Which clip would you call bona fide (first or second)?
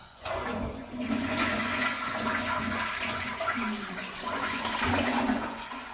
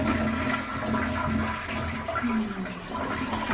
second